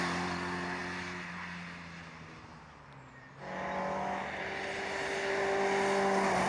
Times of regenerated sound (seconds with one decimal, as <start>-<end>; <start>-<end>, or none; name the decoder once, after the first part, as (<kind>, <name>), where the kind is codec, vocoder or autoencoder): none